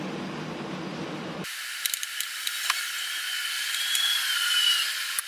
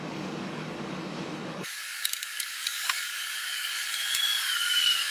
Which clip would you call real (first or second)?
first